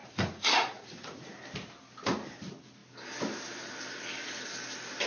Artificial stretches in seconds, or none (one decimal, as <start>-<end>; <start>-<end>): 0.0-1.2